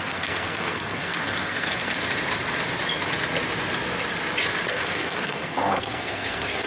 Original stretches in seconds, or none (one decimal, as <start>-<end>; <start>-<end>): 2.0-4.7